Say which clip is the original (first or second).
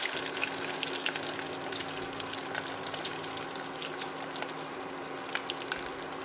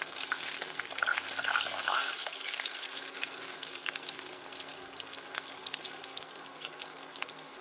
first